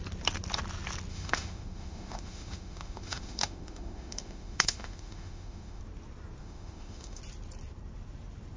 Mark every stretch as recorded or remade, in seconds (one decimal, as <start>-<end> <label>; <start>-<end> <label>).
0.0-1.1 recorded; 1.1-5.8 remade; 5.8-6.4 recorded; 6.4-7.2 remade; 7.2-8.6 recorded